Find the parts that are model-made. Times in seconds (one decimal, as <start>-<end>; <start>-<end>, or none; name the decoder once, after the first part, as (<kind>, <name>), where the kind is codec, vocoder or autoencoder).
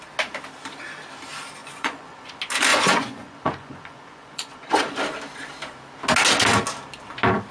1.6-2.3 (vocoder, Vocos); 2.7-4.8